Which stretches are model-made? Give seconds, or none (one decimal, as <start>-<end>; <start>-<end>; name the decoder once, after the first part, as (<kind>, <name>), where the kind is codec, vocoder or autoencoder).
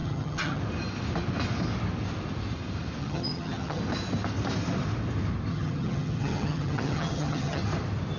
0.0-0.6 (vocoder, HiFi-GAN); 3.0-3.8; 5.5-7.6